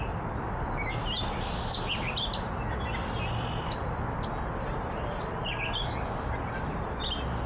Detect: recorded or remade recorded